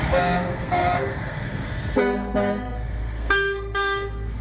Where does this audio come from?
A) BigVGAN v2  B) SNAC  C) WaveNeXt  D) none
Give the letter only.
B